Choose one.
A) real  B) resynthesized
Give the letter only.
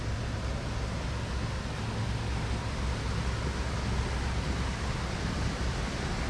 A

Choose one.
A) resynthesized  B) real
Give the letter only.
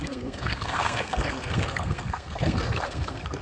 A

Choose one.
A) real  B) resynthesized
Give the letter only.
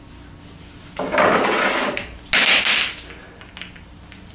A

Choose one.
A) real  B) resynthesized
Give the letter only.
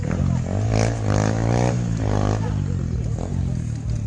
A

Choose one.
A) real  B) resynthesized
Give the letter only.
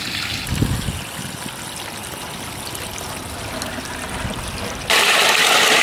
A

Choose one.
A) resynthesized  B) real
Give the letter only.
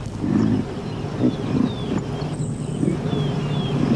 B